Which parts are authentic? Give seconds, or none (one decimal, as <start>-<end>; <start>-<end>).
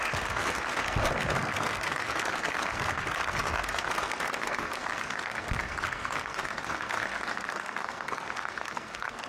none